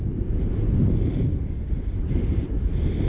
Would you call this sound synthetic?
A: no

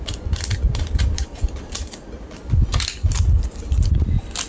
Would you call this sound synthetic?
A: yes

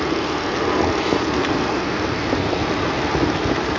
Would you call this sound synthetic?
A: no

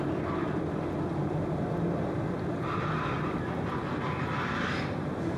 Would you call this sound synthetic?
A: no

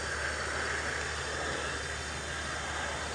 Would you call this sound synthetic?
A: no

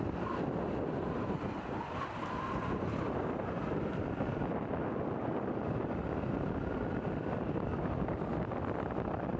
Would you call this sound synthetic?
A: no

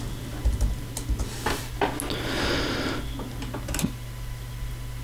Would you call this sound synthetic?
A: no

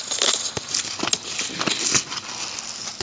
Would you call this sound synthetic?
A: no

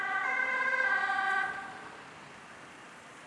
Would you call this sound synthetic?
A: no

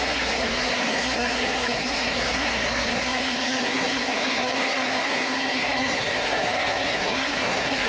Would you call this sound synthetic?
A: yes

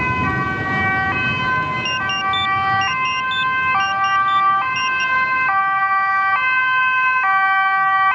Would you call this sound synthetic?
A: no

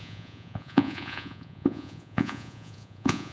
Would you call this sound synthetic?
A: yes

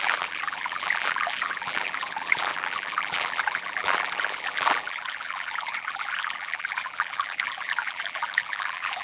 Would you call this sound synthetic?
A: yes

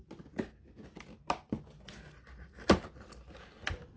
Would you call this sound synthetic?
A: no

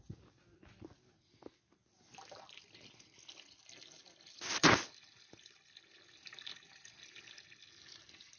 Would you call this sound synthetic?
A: no